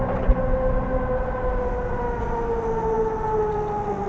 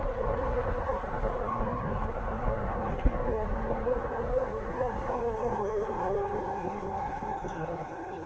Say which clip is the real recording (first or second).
first